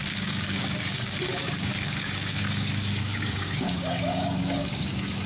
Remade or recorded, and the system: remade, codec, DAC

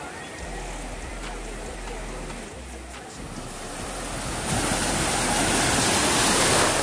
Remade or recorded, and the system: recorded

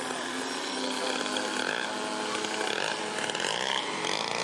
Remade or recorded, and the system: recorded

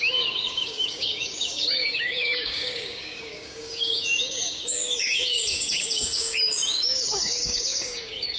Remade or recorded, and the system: remade, codec, DAC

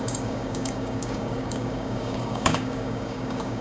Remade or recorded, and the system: remade, codec, DAC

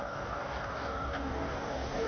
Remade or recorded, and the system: remade, codec, DAC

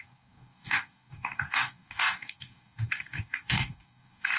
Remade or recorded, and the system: remade, codec, DAC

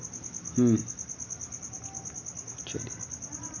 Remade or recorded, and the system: recorded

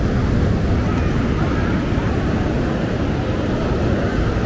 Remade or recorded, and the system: recorded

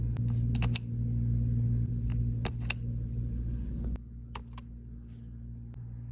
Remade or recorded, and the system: recorded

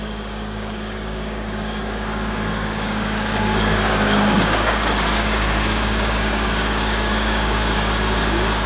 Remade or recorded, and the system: remade, codec, DAC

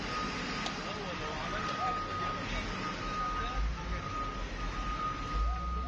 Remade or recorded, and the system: recorded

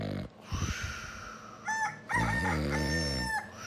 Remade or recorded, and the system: recorded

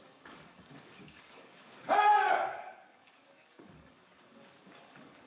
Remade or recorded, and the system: remade, codec, DAC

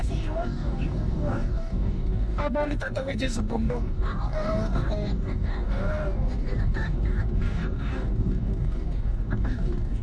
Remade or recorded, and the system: remade, codec, DAC